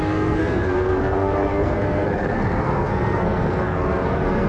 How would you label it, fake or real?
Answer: fake